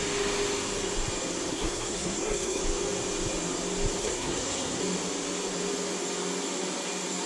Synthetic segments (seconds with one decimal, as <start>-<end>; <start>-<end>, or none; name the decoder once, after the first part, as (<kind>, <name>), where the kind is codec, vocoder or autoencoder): 1.5-2.6 (codec, SNAC); 4.0-4.8